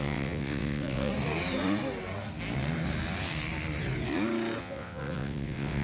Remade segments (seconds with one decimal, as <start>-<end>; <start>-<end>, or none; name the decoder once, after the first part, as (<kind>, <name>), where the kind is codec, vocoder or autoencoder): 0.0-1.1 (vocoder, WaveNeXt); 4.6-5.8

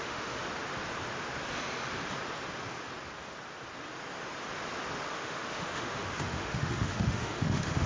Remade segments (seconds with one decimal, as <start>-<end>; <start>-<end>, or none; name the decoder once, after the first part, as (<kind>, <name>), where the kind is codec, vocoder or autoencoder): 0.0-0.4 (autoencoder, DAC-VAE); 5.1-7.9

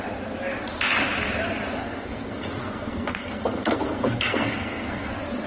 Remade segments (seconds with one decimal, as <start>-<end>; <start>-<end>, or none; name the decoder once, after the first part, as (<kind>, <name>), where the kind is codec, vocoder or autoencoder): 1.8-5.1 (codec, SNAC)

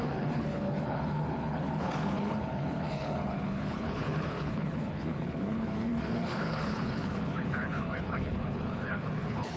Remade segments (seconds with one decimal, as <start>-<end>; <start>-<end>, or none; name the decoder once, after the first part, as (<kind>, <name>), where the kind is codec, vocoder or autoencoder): 0.0-9.6 (codec, HILCodec)

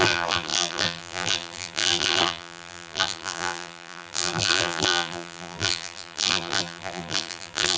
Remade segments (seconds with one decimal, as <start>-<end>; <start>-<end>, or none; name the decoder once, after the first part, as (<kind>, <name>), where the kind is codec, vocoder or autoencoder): 0.0-7.8 (vocoder, BigVGAN v2)

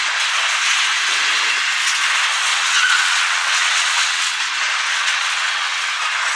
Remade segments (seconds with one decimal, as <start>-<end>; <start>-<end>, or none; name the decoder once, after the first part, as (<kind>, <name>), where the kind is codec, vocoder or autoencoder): 2.5-4.4 (vocoder, WaveNeXt); 4.9-5.9